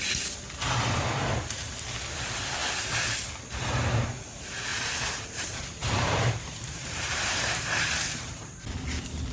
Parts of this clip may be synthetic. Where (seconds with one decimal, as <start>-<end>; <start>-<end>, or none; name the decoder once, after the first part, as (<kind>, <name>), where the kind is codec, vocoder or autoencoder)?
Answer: 4.7-8.6 (vocoder, BigVGAN v2)